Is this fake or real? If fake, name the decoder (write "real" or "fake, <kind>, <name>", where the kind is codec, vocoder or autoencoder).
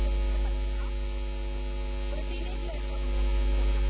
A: real